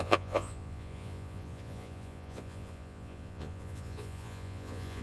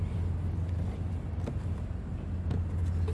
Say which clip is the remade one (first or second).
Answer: first